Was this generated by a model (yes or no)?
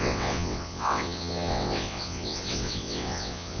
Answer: yes